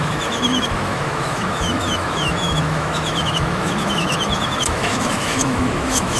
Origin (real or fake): fake